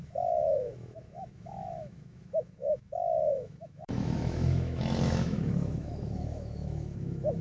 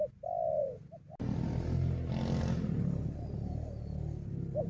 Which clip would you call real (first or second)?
second